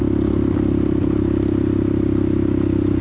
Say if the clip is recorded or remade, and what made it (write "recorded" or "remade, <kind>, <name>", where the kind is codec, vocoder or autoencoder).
recorded